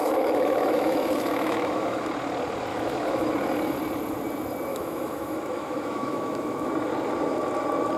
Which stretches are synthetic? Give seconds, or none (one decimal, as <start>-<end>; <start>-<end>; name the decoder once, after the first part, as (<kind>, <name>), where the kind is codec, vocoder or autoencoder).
0.0-2.1 (autoencoder, DAC-VAE); 2.7-3.3; 4.7-6.7